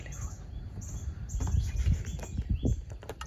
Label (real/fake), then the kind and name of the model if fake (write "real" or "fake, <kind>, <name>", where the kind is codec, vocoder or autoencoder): real